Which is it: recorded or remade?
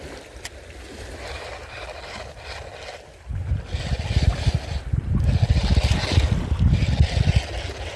recorded